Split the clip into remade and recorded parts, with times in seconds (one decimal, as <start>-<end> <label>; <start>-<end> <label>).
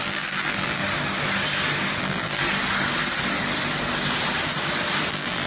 0.0-0.8 remade; 0.8-2.0 recorded; 2.0-2.4 remade; 2.4-5.1 recorded; 5.1-5.5 remade